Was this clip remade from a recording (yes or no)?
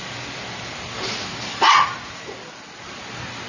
no